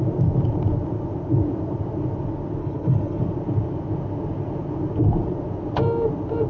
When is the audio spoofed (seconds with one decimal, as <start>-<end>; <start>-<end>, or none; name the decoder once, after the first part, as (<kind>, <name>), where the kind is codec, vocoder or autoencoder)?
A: 2.6-3.2 (codec, HILCodec)